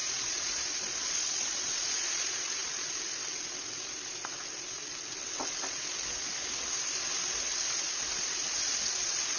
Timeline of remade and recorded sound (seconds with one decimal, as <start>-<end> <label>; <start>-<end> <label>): 0.0-9.4 recorded